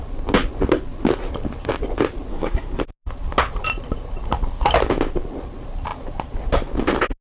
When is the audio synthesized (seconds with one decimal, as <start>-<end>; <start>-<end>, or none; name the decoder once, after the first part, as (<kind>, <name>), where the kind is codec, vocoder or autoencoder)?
2.3-2.8 (codec, SNAC)